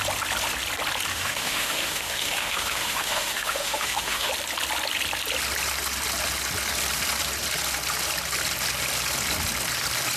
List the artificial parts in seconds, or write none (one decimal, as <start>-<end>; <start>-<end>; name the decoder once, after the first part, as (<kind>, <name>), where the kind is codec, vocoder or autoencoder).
1.1-4.3 (autoencoder, DAC-VAE)